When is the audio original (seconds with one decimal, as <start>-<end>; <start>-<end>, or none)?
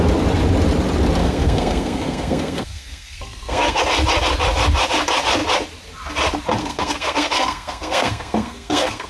0.0-1.2; 3.8-6.6